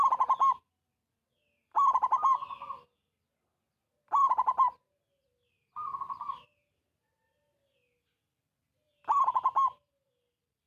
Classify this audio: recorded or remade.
recorded